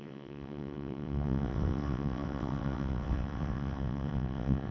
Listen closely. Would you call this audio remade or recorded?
remade